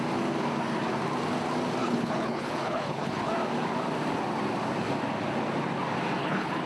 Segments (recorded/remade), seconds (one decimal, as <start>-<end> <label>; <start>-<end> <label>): 0.0-1.8 recorded; 1.8-3.3 remade; 3.3-6.2 recorded; 6.2-6.7 remade

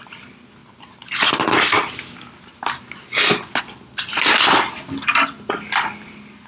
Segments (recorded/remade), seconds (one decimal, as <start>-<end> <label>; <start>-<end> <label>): 0.0-6.5 recorded

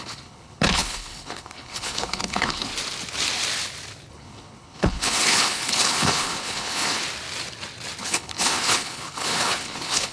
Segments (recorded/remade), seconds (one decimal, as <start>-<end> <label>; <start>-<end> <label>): 0.0-2.7 remade; 2.7-4.1 recorded; 4.1-7.0 remade; 7.0-8.0 recorded; 8.0-10.1 remade

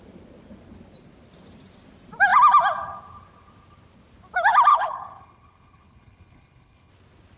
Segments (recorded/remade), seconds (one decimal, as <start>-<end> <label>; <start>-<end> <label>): 0.0-4.7 recorded; 4.7-6.9 remade; 6.9-7.4 recorded

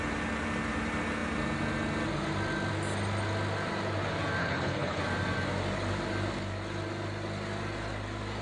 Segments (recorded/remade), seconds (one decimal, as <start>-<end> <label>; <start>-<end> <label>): 0.0-4.4 recorded; 4.4-5.0 remade; 5.0-8.4 recorded

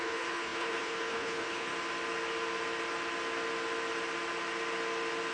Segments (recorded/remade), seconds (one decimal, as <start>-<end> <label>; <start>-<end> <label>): 0.0-1.7 remade; 1.7-5.3 recorded

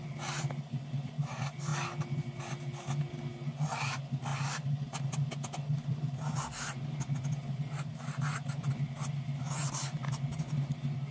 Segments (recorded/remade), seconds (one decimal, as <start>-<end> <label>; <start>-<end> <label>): 0.0-11.1 recorded